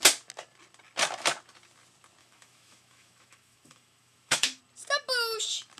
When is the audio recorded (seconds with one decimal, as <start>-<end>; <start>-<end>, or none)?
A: 0.0-2.2; 4.6-5.8